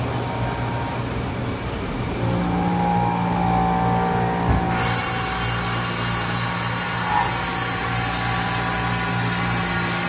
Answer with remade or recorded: recorded